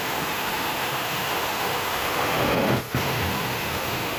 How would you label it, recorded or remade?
remade